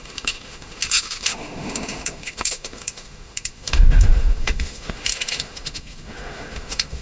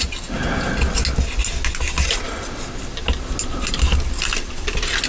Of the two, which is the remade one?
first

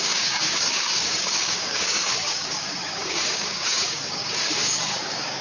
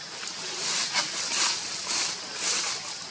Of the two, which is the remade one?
first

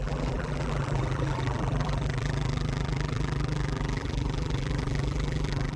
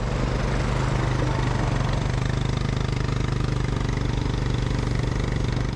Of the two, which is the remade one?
first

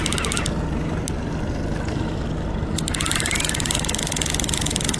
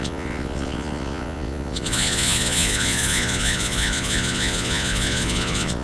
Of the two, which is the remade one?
second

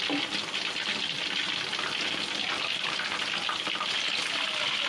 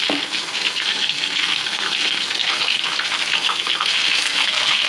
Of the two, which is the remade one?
second